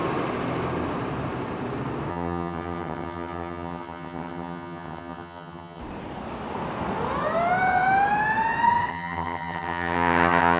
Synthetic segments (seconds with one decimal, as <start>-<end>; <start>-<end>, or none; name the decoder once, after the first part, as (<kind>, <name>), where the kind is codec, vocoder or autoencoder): 2.1-5.8 (vocoder, HiFi-GAN); 8.9-10.6

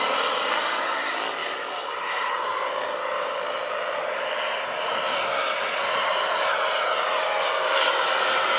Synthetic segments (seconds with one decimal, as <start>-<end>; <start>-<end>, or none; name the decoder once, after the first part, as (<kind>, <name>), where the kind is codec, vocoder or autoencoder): none

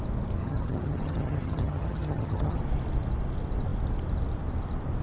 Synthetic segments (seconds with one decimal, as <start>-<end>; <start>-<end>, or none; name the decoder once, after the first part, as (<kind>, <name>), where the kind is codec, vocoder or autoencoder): 0.4-2.6 (vocoder, HiFi-GAN)

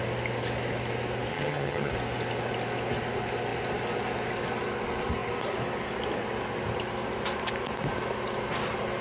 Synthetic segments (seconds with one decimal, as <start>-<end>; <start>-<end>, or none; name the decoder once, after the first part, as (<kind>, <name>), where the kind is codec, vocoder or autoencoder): 1.3-1.9 (vocoder, HiFi-GAN)

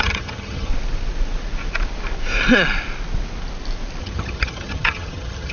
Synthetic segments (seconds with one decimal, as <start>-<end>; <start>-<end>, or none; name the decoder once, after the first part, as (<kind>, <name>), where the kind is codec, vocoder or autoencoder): 0.0-0.7 (vocoder, HiFi-GAN); 4.0-5.5

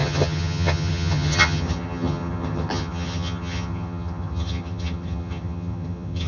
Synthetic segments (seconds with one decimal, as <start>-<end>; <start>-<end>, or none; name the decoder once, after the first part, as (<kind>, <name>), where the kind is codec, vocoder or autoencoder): 0.0-6.3 (vocoder, HiFi-GAN)